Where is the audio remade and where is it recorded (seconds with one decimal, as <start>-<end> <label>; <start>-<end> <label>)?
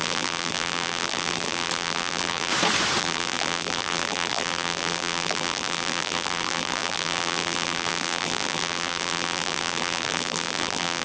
0.0-2.5 remade; 2.5-3.0 recorded; 3.0-11.0 remade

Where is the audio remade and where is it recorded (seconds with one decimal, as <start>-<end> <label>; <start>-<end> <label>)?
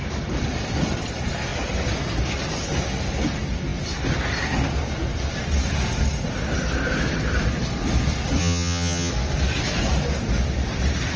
0.0-8.4 recorded; 8.4-9.1 remade; 9.1-11.2 recorded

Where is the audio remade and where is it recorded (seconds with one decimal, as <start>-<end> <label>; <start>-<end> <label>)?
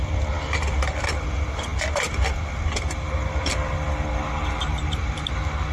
0.0-5.7 recorded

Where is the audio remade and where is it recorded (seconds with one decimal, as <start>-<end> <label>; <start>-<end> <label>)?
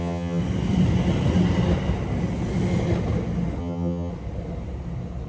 0.0-0.4 remade; 0.4-3.6 recorded; 3.6-4.1 remade; 4.1-5.3 recorded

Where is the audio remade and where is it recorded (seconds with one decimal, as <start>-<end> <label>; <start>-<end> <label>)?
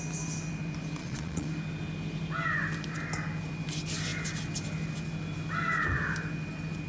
0.0-1.0 recorded; 1.0-1.5 remade; 1.5-6.9 recorded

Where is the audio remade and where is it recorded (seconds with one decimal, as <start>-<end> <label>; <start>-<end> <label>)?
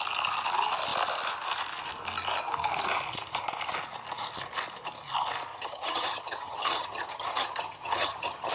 0.0-5.5 recorded; 5.5-8.5 remade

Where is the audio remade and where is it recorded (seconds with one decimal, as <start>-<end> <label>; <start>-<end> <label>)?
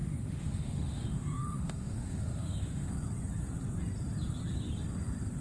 0.0-2.9 remade; 2.9-5.4 recorded